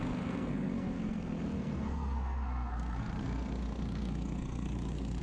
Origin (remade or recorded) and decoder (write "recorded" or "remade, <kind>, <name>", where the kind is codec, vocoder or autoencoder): remade, codec, SNAC